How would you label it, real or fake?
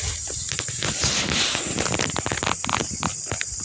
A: real